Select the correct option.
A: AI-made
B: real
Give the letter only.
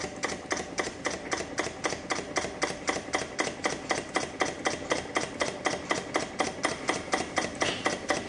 B